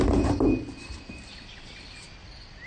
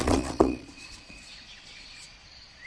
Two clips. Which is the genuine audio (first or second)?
first